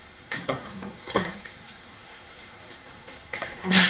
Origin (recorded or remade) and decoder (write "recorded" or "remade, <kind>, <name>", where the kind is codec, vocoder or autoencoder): remade, codec, SNAC